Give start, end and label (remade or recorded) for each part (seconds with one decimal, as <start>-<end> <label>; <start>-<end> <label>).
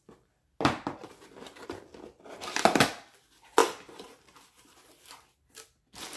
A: 0.0-1.0 recorded; 1.0-2.9 remade; 2.9-3.6 recorded; 3.6-5.0 remade; 5.0-6.2 recorded